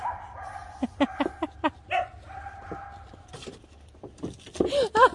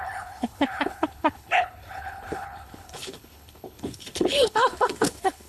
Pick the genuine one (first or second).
first